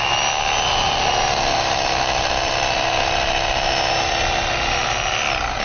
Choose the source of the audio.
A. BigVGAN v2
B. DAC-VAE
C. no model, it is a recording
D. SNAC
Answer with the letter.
C